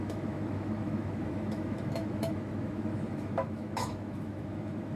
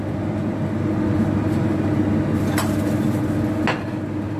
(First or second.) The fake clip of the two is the first